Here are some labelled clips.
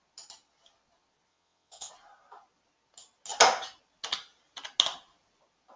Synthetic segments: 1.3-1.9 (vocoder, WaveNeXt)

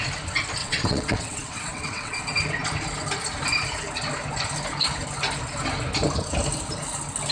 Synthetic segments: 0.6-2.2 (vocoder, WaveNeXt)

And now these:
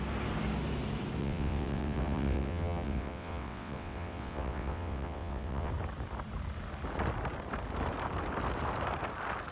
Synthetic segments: 1.2-5.7 (vocoder, WaveNeXt)